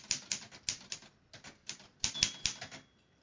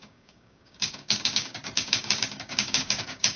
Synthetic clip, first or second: second